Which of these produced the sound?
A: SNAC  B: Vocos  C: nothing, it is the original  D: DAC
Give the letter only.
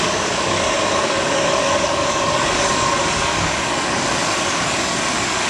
D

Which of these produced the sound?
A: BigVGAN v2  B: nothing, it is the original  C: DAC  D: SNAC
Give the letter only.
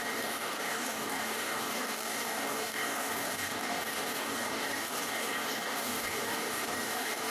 C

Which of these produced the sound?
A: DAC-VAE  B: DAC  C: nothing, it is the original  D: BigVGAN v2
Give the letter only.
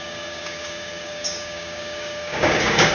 B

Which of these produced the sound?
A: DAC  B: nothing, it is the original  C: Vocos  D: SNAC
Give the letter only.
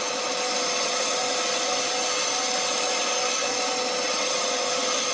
B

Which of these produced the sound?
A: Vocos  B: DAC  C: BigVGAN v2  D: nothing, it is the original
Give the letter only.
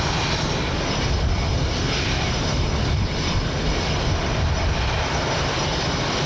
D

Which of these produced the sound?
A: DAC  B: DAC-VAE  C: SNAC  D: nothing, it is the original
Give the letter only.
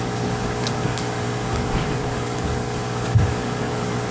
A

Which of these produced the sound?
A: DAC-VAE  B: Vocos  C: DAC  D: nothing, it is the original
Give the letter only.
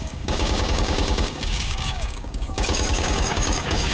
C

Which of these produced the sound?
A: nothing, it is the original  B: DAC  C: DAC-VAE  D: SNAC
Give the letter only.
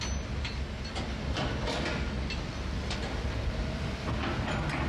A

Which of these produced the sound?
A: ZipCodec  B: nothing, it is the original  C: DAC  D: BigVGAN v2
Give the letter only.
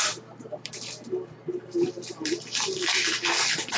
B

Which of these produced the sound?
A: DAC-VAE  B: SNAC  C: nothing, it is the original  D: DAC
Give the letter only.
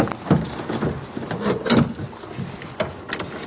C